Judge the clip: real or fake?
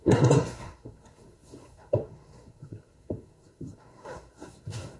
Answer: fake